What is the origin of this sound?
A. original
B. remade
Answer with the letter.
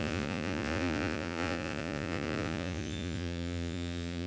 B